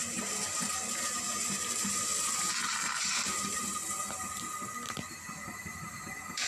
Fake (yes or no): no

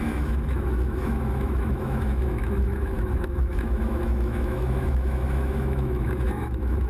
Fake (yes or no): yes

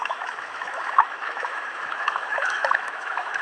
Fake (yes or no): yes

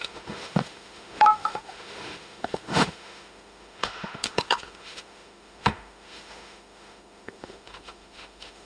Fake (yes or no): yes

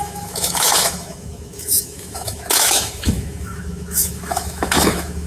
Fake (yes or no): yes